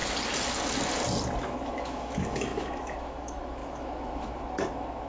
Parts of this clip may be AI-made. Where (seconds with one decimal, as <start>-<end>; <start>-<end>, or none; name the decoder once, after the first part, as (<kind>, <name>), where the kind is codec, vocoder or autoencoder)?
1.4-5.1 (autoencoder, DAC-VAE)